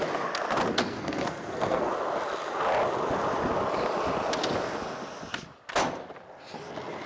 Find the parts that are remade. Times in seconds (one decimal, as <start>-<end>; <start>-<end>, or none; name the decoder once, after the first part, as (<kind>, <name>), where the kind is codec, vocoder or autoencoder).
0.7-1.9 (codec, SNAC)